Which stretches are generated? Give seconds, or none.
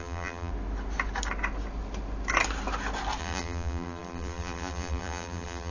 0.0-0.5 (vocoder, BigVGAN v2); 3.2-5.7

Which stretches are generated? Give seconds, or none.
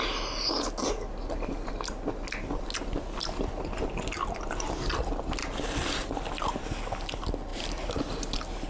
none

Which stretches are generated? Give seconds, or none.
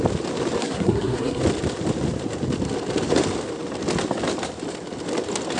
0.6-1.4 (codec, SNAC)